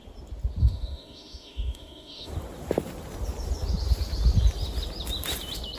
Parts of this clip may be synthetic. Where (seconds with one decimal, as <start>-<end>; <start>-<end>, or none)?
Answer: 0.6-2.3